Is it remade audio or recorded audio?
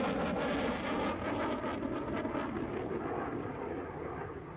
recorded